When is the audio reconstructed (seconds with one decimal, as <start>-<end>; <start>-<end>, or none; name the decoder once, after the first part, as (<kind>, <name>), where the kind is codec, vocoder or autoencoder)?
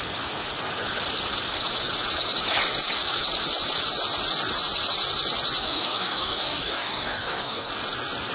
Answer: 5.6-7.7 (codec, DAC)